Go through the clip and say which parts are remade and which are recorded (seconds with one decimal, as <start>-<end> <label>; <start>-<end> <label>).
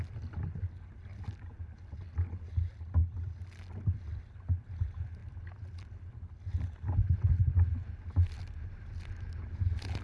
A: 0.0-10.0 recorded